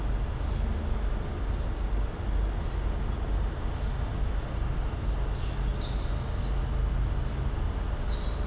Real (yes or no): yes